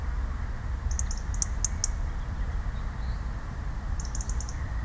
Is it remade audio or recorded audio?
recorded